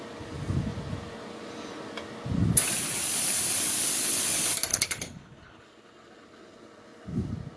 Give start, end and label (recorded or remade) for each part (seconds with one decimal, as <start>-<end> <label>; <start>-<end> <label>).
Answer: 0.0-4.7 recorded; 4.7-5.6 remade; 5.6-7.6 recorded